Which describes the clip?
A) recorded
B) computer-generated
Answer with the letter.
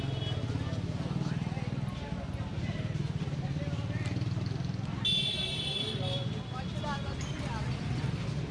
A